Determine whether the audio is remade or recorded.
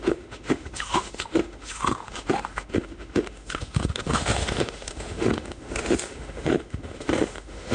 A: remade